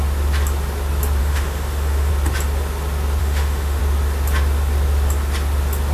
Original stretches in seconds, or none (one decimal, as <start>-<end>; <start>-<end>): 0.0-1.2; 2.1-3.2; 3.8-5.9